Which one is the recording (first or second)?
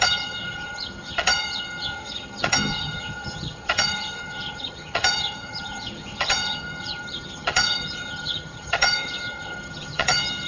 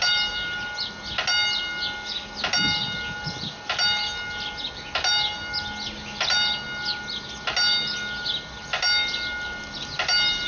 second